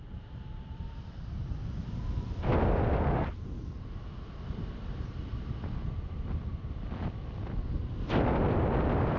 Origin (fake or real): real